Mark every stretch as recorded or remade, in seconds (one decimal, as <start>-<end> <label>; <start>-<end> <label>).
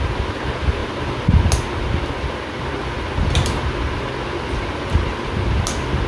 0.0-6.1 recorded